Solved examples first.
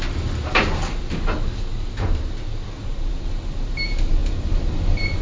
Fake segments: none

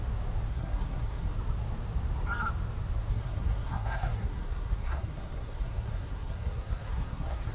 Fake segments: 0.5-1.3; 3.1-7.5

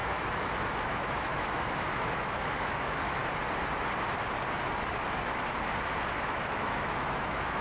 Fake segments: 0.0-3.2; 6.3-7.6

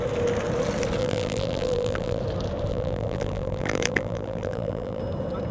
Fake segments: 1.0-2.2; 2.7-5.0

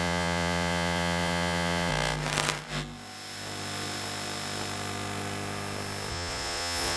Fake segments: 0.0-1.9; 6.1-7.0

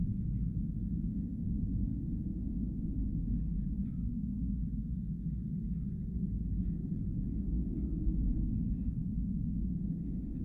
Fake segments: 0.0-1.9; 3.1-4.6; 7.0-9.0; 10.0-10.4